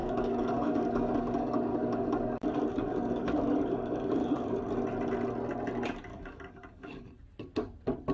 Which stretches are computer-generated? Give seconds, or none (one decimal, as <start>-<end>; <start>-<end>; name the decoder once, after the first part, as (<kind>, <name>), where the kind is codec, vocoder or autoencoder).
0.0-4.6 (codec, DAC); 6.1-7.1